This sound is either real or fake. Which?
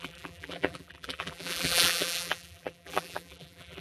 fake